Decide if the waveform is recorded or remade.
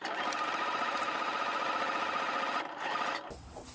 recorded